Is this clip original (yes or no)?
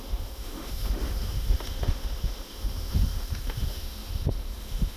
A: no